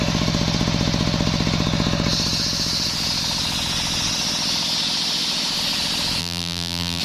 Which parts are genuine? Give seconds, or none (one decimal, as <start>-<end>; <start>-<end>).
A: 0.0-6.2

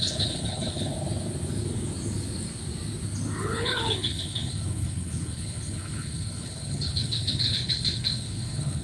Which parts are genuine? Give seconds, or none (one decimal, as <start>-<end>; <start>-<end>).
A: 0.9-3.4